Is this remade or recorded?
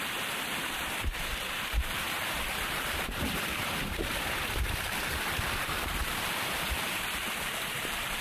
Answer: remade